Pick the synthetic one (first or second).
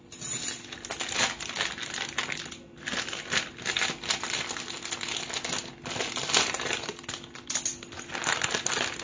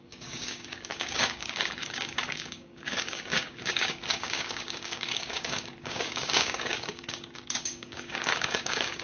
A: second